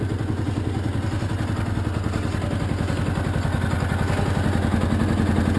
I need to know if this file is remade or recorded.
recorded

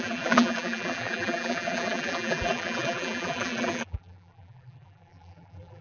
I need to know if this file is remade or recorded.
remade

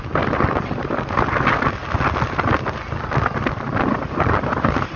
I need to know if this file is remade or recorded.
recorded